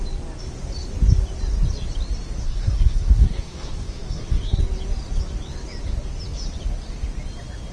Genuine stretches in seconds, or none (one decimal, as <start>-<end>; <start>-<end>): 0.0-2.4; 4.6-7.7